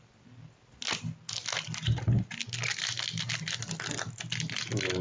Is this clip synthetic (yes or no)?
no